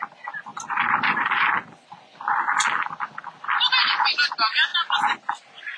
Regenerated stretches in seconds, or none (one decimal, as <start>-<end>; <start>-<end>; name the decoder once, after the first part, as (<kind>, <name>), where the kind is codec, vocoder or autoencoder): none